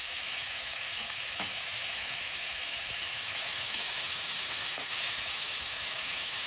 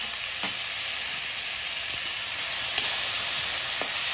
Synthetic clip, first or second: first